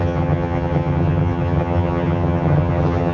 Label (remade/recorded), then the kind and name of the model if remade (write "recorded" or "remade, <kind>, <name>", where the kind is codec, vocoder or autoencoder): remade, vocoder, HiFi-GAN